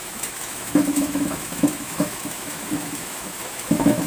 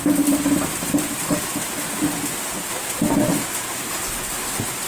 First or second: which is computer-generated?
first